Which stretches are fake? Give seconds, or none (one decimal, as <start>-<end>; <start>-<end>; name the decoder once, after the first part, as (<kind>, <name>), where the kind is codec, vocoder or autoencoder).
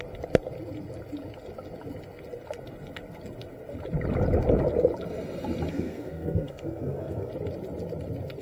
5.7-7.3 (codec, SNAC)